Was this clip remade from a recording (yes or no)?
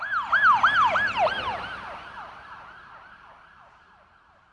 yes